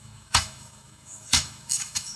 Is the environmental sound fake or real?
fake